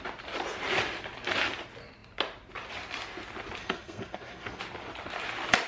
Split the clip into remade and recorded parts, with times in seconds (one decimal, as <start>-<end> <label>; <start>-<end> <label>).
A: 0.0-3.6 recorded; 3.6-4.6 remade; 4.6-5.7 recorded